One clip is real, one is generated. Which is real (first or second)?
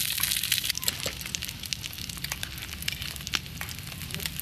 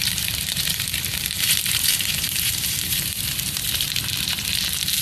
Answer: first